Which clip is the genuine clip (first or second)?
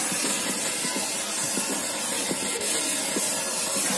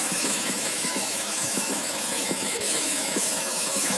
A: first